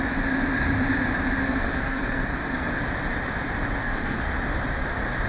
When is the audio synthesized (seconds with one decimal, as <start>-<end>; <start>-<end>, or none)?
1.4-2.7; 3.8-4.3